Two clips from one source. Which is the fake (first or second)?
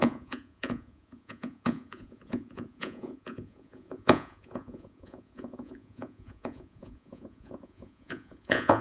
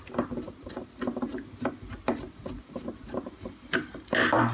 first